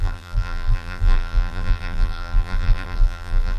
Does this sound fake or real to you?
fake